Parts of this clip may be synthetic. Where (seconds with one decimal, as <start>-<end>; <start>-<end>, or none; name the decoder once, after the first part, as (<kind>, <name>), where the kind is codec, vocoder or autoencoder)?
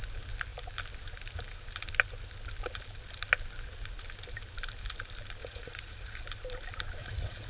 5.4-6.2 (vocoder, Vocos); 7.0-7.5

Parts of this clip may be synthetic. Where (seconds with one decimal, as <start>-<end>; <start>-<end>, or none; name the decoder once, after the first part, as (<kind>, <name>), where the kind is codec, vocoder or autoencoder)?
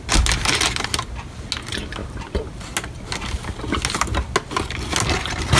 none